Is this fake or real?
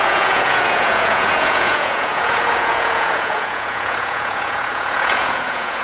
fake